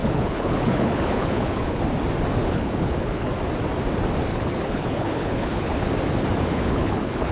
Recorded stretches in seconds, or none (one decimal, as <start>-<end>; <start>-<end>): 1.8-2.4; 3.3-4.3; 5.9-6.5